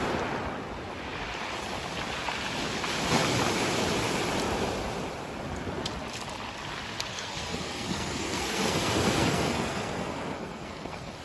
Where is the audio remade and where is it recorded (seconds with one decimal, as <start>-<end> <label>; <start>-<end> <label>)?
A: 0.0-7.1 recorded; 7.1-11.2 remade